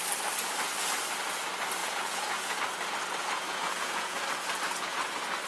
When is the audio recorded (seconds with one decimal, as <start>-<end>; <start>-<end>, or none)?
0.0-1.8; 2.6-3.2; 4.2-5.5

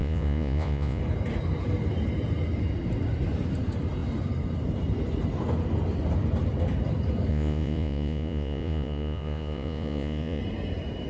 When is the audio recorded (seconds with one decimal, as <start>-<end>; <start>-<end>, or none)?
1.0-7.3; 10.4-11.1